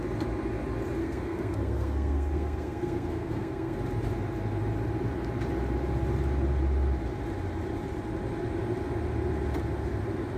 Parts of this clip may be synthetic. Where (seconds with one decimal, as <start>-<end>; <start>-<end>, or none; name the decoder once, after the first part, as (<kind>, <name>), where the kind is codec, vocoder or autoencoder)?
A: 1.0-3.8 (codec, SNAC)